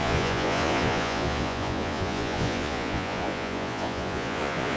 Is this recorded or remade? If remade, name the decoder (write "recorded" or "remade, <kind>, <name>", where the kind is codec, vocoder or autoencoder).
remade, vocoder, Vocos